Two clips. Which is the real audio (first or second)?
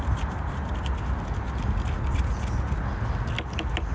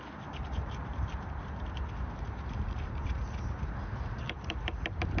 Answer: first